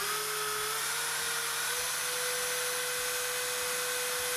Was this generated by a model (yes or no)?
no